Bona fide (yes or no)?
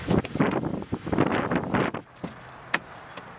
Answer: yes